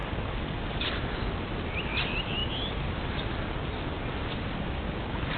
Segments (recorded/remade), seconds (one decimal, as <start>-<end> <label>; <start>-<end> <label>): 0.0-5.4 recorded